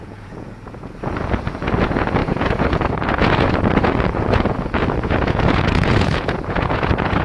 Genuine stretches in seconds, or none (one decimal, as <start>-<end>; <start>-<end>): none